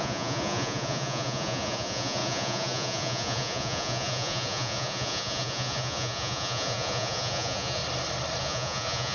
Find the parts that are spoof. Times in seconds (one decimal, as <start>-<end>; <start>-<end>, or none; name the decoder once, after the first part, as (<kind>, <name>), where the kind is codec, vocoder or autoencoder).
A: 0.0-7.8 (vocoder, Vocos); 8.4-9.1